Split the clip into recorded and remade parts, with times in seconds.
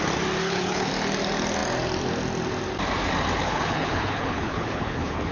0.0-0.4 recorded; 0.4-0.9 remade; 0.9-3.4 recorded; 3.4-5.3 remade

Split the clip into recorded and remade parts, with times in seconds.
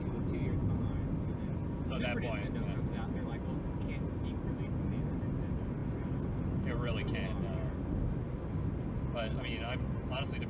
0.0-10.5 recorded